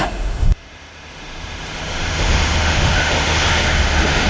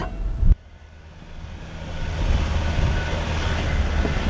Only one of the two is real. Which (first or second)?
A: second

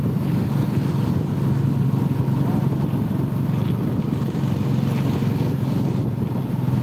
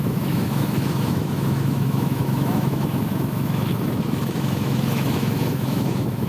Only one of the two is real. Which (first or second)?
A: first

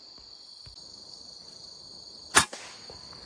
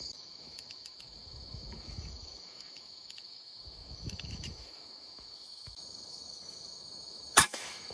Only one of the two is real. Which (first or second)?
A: first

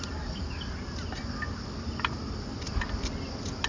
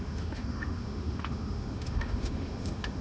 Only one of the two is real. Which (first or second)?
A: first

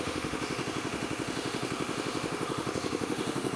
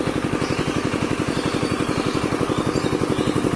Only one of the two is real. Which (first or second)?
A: second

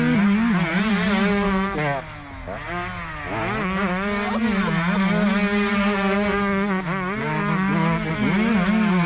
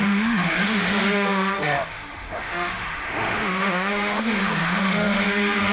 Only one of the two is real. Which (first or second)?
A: first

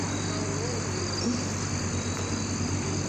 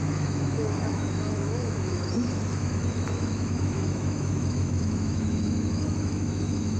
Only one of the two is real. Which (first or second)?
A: first